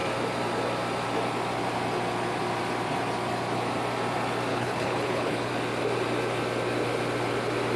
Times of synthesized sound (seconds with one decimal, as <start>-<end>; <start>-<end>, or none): 4.5-5.5